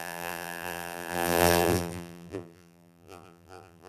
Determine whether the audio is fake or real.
fake